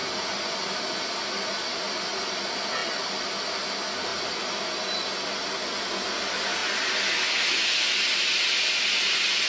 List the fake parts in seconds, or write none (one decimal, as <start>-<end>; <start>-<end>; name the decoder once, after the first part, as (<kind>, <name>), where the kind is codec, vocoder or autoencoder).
none